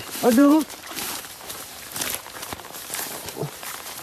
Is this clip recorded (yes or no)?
no